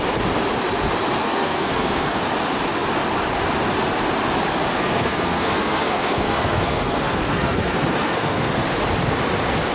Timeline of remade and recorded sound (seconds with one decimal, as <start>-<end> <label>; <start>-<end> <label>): 0.0-1.2 recorded; 1.2-2.2 remade; 2.2-4.8 recorded; 4.8-8.5 remade; 8.5-9.7 recorded